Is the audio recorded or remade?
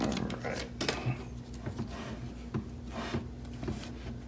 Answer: recorded